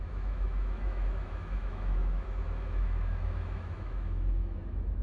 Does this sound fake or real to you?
fake